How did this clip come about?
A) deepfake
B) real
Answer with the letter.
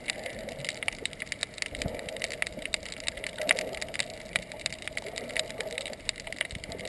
B